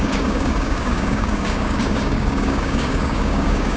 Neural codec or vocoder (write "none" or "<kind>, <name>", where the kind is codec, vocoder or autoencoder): codec, DAC